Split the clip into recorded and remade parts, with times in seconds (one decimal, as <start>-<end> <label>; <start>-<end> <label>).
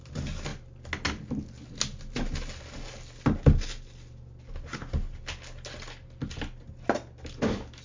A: 0.0-7.8 recorded